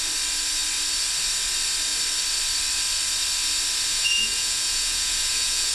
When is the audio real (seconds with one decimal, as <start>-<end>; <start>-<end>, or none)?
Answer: 0.0-3.9